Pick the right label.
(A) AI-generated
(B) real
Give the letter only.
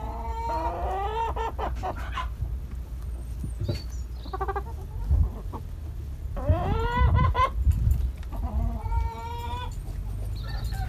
B